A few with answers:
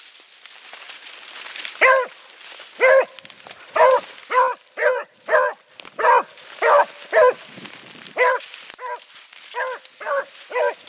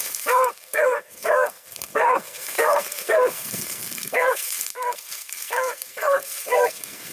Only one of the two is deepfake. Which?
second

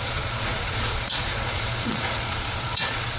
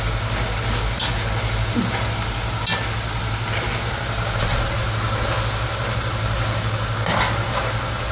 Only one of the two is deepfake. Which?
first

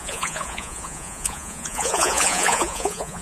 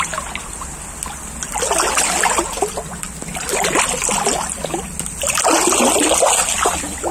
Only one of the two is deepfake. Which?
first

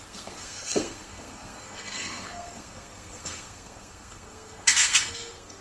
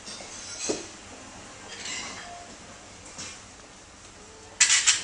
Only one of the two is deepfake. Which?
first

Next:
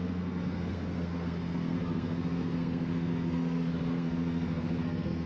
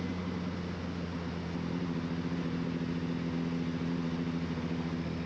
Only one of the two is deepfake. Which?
first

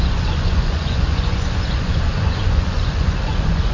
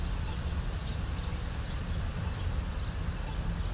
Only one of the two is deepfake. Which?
first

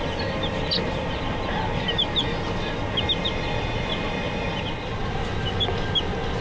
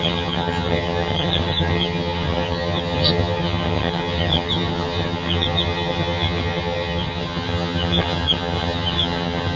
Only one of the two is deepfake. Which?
second